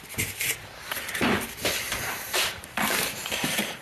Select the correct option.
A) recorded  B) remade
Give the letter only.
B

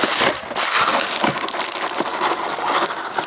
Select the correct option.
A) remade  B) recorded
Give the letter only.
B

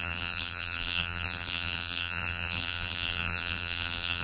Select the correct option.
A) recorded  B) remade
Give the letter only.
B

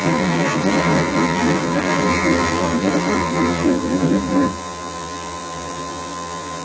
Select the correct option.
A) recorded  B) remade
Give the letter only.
B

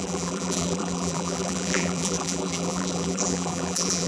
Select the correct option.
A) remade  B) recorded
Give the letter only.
A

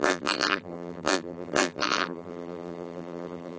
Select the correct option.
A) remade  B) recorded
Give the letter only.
A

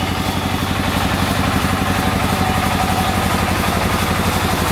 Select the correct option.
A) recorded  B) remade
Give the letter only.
A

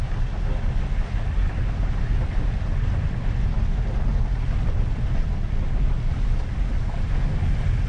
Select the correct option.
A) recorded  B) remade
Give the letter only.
A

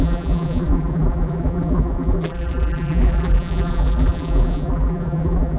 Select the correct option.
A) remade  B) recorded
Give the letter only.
A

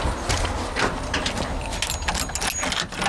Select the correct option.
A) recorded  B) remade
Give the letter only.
A